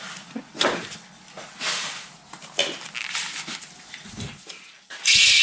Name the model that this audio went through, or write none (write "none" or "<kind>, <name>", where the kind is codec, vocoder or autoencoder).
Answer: none